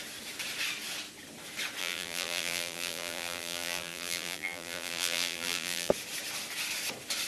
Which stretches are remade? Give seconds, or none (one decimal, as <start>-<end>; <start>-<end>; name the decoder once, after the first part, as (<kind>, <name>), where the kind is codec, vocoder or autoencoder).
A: 1.8-5.9 (vocoder, BigVGAN v2)